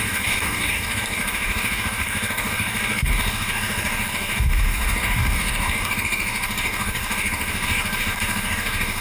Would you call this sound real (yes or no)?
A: no